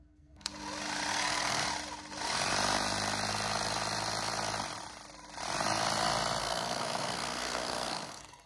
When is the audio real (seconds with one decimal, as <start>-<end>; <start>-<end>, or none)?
0.5-1.1; 1.6-6.4